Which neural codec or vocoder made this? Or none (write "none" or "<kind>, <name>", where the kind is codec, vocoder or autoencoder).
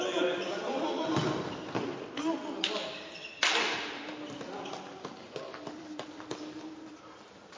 none